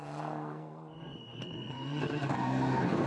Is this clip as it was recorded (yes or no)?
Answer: no